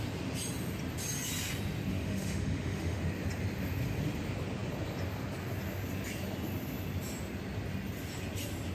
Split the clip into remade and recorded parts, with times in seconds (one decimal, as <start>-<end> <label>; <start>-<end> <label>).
0.0-1.9 recorded; 1.9-3.0 remade; 3.0-8.7 recorded